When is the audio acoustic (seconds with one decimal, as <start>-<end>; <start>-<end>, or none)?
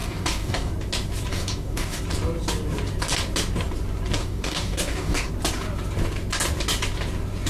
0.7-1.3; 2.0-4.2; 5.3-7.5